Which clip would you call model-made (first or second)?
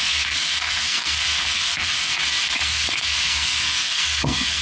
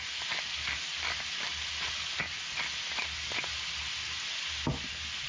first